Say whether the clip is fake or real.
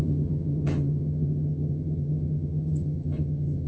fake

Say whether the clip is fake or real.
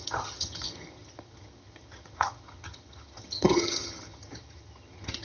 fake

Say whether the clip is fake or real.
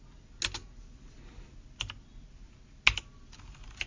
real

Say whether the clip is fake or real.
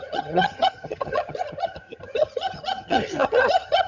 fake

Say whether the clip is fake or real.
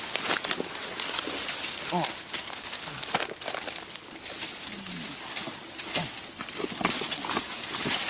real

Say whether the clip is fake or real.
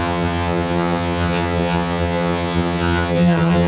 fake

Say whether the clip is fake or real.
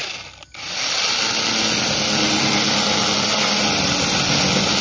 real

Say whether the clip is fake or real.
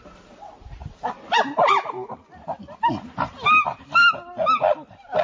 real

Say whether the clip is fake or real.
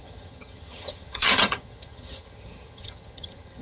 fake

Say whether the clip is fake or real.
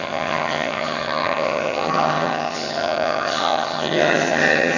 fake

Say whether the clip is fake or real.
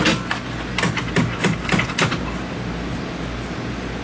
real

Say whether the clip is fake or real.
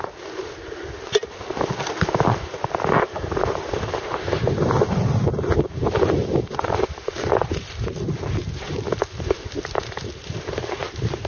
real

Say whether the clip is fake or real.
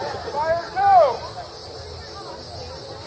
real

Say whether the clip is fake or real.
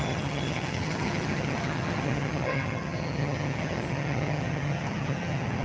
fake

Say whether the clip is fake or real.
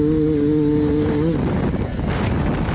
real